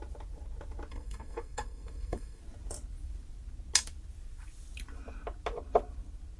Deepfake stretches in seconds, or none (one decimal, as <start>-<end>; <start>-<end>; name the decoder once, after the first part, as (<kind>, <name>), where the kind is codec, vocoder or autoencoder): 0.9-2.4 (codec, SNAC)